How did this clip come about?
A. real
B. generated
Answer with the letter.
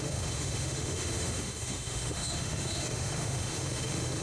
B